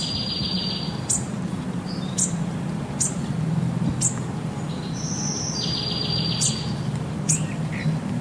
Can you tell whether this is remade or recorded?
remade